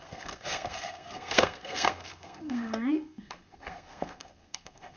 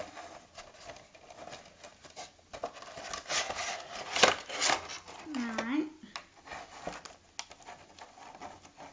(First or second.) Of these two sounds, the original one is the second